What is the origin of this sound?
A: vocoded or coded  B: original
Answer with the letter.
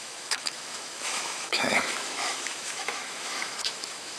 A